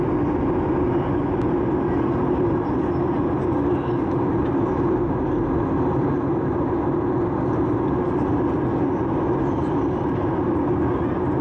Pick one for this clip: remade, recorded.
recorded